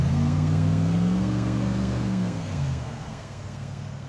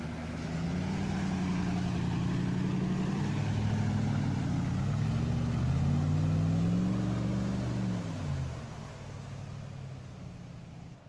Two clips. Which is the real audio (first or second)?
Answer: second